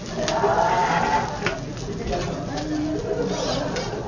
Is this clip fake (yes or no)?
no